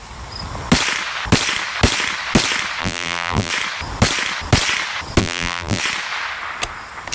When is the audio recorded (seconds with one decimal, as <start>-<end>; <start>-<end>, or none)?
0.0-2.8; 3.5-5.2; 5.8-7.1